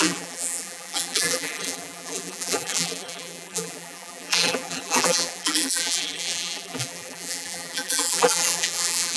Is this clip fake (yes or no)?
yes